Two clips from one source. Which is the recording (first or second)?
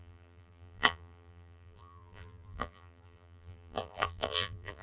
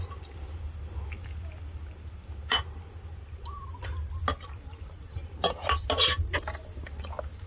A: second